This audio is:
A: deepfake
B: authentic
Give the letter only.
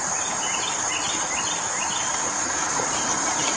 B